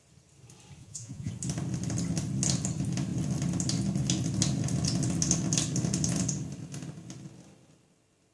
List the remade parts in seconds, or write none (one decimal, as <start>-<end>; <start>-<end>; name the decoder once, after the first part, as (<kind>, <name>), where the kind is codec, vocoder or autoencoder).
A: 0.8-1.3 (vocoder, Vocos)